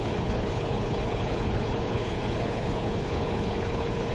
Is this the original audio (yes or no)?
no